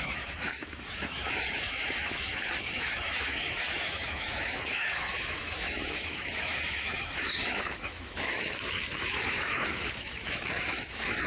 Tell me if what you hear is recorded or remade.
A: remade